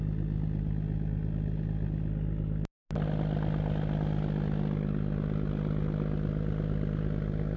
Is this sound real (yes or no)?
yes